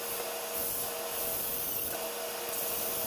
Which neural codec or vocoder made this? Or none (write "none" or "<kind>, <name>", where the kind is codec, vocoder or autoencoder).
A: none